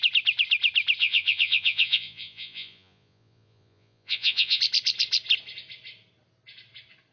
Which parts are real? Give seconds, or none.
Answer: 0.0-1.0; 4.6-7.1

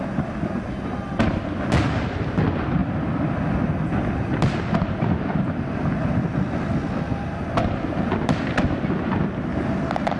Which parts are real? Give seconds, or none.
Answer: 0.0-10.2

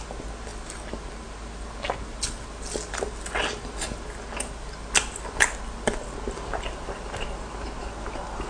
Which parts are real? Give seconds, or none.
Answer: 0.0-8.5

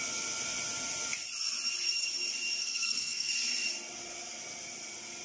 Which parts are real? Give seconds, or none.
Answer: 0.0-2.6; 3.3-5.2

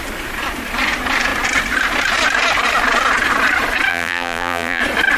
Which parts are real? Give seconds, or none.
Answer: 0.0-3.9; 4.8-5.2